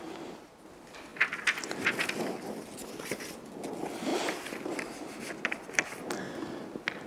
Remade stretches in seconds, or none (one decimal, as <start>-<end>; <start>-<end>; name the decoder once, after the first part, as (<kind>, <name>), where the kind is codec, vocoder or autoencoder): none